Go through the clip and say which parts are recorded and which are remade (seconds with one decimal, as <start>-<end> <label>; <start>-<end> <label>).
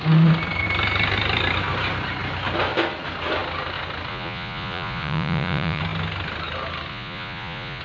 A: 0.0-4.1 recorded; 4.1-5.8 remade; 5.8-6.9 recorded; 6.9-7.8 remade